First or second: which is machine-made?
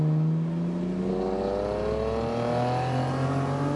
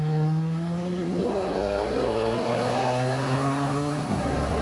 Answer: second